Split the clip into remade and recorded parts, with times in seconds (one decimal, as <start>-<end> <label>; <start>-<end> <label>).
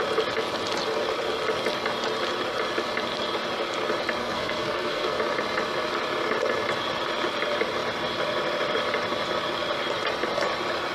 0.0-4.2 recorded; 4.2-5.2 remade; 5.2-10.9 recorded